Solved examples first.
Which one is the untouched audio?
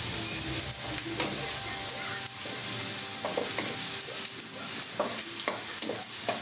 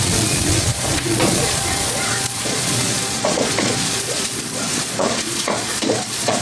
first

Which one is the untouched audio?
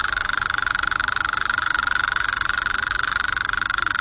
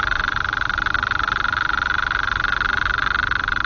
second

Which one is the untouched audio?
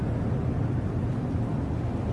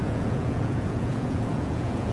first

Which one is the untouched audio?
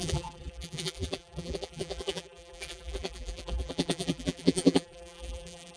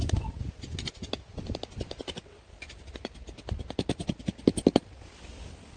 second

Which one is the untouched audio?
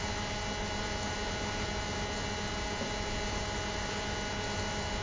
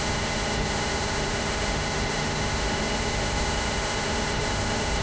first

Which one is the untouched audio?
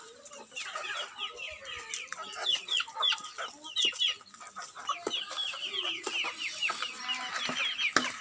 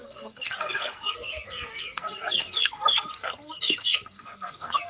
first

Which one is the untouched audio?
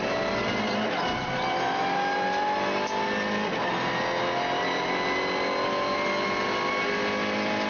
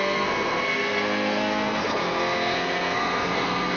first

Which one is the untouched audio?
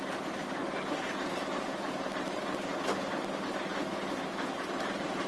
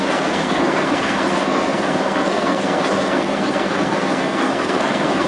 first